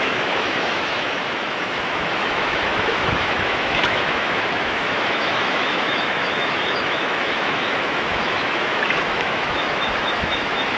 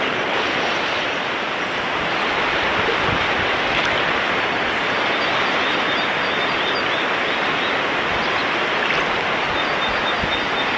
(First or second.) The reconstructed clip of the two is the first